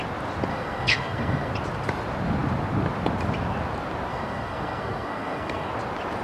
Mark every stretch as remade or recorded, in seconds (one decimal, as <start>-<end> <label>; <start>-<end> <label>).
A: 0.0-0.5 recorded; 0.5-1.5 remade; 1.5-4.1 recorded; 4.1-5.7 remade; 5.7-6.2 recorded